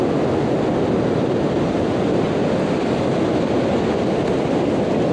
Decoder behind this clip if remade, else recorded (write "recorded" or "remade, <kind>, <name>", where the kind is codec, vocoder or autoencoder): recorded